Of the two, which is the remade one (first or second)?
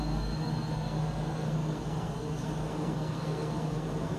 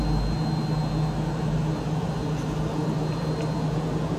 first